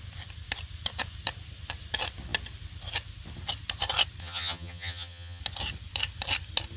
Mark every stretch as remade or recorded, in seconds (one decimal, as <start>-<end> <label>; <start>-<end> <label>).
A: 0.0-4.2 recorded; 4.2-5.4 remade; 5.4-6.8 recorded